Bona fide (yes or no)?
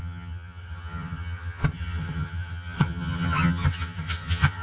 no